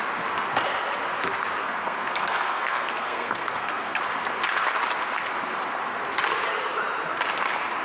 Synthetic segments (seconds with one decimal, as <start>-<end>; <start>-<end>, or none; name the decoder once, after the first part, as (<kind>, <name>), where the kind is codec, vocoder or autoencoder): 1.6-4.0 (codec, SNAC)